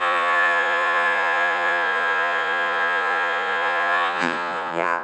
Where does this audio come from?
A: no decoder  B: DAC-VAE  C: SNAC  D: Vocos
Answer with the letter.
D